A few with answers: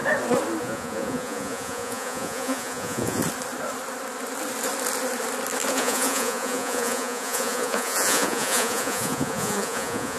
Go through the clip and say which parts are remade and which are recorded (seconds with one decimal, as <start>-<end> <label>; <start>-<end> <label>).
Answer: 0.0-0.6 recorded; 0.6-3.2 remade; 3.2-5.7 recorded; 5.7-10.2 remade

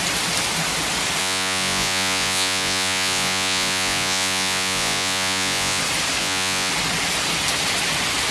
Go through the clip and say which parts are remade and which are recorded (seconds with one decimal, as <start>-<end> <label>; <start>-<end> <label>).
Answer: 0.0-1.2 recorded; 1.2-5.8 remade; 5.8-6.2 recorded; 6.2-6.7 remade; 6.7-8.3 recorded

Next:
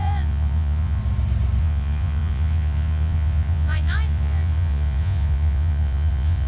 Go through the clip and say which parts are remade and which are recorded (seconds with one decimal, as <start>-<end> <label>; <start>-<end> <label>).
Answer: 0.0-1.0 remade; 1.0-1.6 recorded; 1.6-6.5 remade

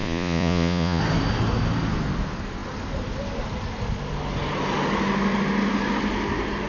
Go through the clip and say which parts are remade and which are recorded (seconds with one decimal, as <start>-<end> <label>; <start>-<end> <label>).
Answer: 0.0-1.0 remade; 1.0-6.7 recorded

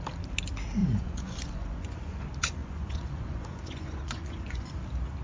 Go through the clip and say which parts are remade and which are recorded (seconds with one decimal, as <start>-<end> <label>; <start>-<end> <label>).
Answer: 0.0-0.8 recorded; 0.8-2.2 remade; 2.2-2.6 recorded; 2.6-4.7 remade; 4.7-5.2 recorded

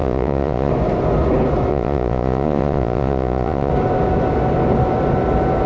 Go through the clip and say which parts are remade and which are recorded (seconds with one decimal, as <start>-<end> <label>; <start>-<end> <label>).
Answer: 0.0-0.7 remade; 0.7-1.7 recorded; 1.7-3.7 remade; 3.7-5.7 recorded

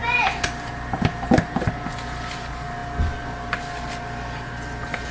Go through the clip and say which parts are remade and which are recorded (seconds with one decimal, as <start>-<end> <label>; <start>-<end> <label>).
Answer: 0.0-5.1 recorded